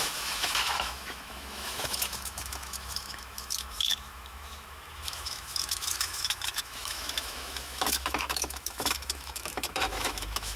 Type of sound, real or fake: fake